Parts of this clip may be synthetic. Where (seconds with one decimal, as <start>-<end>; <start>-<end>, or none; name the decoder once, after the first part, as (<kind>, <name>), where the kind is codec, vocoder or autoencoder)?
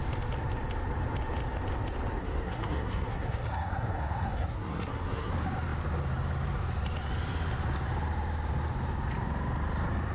2.2-5.3 (codec, SNAC)